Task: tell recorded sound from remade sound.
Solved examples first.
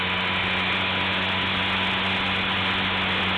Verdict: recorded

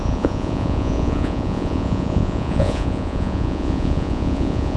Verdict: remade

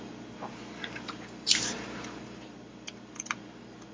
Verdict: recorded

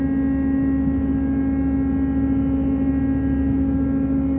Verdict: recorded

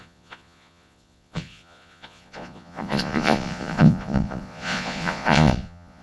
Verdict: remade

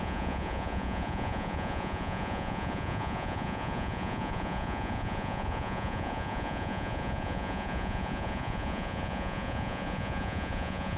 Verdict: remade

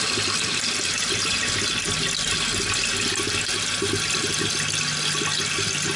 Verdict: recorded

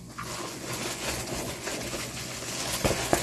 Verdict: remade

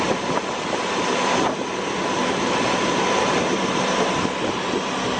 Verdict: recorded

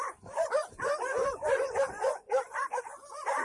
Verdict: remade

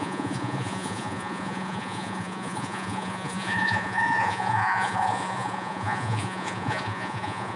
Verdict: remade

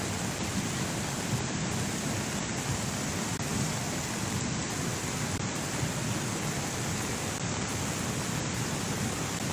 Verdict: recorded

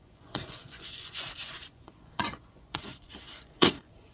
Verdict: remade